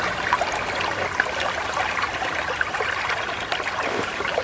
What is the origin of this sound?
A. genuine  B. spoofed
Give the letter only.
B